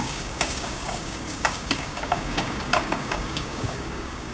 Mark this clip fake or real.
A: fake